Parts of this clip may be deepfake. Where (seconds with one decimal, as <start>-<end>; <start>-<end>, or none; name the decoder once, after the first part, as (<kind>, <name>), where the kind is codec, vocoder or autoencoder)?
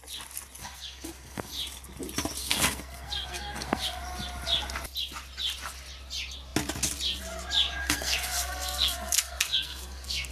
0.6-1.5 (codec, SNAC); 2.4-4.0; 7.8-10.3